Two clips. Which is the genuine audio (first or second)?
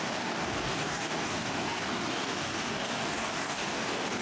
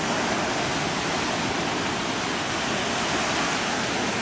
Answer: second